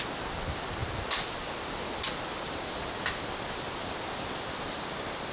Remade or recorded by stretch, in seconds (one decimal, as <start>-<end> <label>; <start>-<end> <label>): 0.0-5.3 recorded